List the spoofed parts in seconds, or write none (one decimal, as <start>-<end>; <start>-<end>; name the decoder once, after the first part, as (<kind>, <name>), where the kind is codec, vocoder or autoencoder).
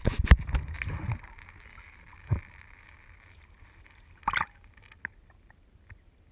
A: none